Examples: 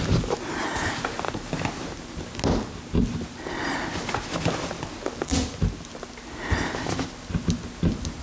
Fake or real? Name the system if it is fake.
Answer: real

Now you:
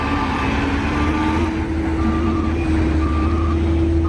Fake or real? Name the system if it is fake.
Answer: real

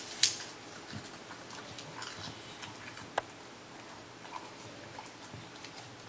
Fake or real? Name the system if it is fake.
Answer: real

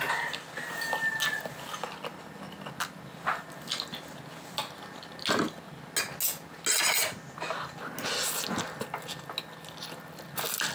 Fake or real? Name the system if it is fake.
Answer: real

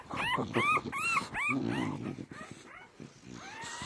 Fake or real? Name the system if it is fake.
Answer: real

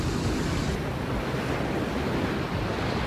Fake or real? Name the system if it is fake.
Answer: real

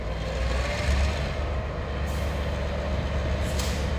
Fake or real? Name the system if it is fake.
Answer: real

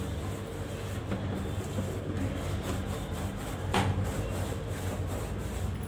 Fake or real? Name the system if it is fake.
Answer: real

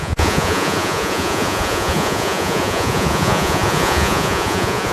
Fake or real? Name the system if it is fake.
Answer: fake, vocoder, Vocos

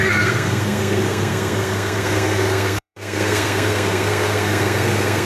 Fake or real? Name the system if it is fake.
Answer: fake, codec, SNAC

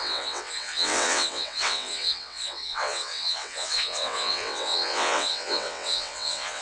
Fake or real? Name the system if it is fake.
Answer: fake, vocoder, WaveNeXt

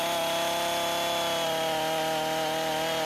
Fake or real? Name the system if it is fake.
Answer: real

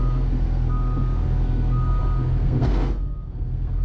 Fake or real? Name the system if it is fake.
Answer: fake, codec, SNAC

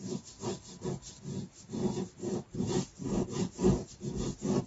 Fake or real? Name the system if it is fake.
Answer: real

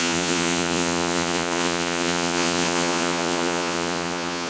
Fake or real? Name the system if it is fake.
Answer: fake, vocoder, Vocos